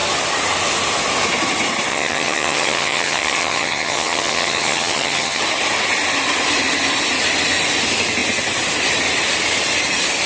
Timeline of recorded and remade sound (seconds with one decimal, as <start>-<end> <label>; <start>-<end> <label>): 0.0-1.9 recorded; 1.9-5.4 remade; 5.4-10.3 recorded